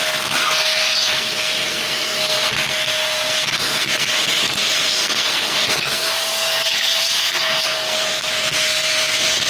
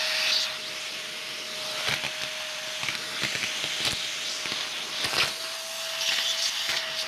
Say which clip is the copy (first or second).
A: first